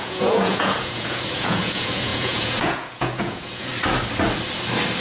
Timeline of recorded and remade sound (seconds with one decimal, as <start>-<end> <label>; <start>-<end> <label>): 0.0-3.7 remade; 3.7-5.0 recorded